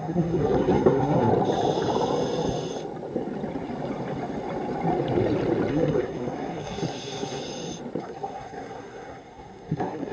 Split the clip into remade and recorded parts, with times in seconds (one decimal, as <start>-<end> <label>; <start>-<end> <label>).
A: 0.0-1.3 remade; 1.3-5.7 recorded; 5.7-7.4 remade; 7.4-8.0 recorded; 8.0-10.1 remade